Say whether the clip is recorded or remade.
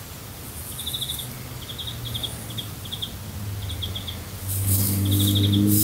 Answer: recorded